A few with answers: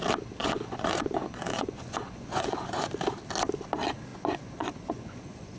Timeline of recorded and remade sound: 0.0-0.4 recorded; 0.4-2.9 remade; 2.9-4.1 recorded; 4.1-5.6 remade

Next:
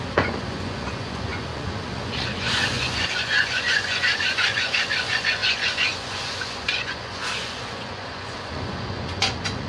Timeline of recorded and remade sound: 0.0-9.7 remade

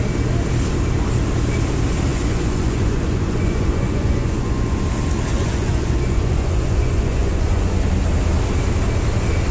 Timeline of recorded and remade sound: 0.0-2.1 recorded; 2.1-4.8 remade; 4.8-5.3 recorded; 5.3-7.8 remade; 7.8-9.5 recorded

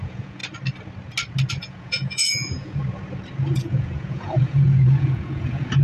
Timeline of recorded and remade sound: 0.0-0.4 remade; 0.4-1.6 recorded; 1.6-2.8 remade; 2.8-3.5 recorded; 3.5-5.8 remade

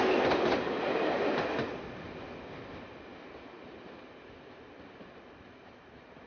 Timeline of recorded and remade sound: 0.0-6.3 recorded

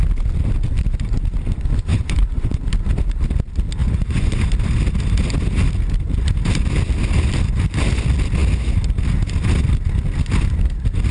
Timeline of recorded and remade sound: 0.0-1.9 recorded; 1.9-2.6 remade; 2.6-3.8 recorded; 3.8-4.5 remade; 4.5-11.1 recorded

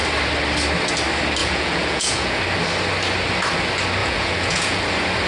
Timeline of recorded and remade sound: 0.0-1.4 recorded; 1.4-2.4 remade; 2.4-4.0 recorded; 4.0-4.8 remade; 4.8-5.3 recorded

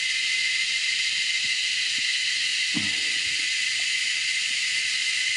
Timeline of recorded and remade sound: 0.0-5.4 recorded